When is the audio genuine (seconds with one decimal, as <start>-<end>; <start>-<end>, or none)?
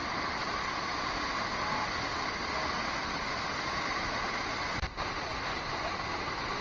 0.0-6.6